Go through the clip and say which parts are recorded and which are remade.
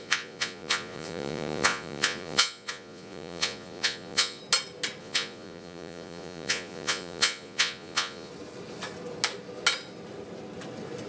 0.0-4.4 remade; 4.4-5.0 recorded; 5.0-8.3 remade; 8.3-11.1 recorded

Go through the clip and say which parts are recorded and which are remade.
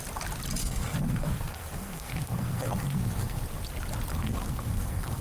0.0-0.6 recorded; 0.6-3.4 remade; 3.4-4.1 recorded; 4.1-5.2 remade